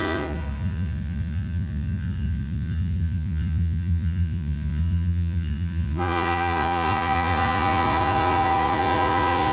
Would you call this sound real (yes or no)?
no